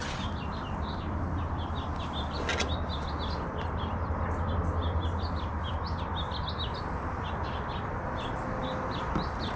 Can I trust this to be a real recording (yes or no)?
yes